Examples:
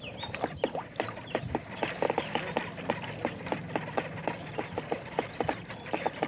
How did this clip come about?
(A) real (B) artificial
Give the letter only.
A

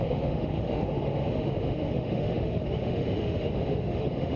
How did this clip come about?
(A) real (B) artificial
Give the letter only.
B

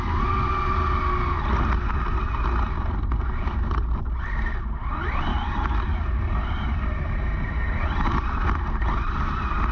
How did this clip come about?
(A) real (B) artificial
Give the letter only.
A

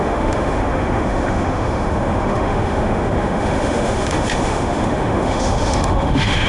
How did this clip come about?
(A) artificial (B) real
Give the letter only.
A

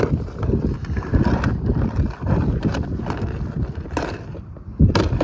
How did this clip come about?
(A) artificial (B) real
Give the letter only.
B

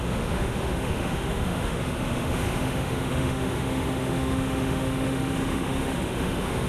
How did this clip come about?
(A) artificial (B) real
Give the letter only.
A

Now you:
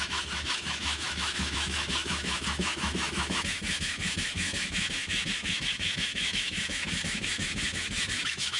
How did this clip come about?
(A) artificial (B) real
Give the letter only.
A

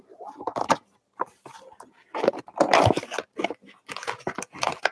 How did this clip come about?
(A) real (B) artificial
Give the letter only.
A